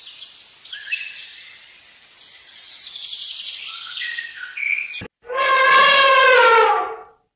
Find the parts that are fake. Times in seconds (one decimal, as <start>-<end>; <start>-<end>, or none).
3.7-4.9